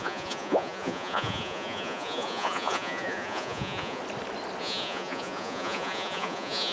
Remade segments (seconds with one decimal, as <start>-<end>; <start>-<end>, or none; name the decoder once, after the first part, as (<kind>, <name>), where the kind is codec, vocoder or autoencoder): 0.0-4.0 (vocoder, Vocos); 4.6-6.7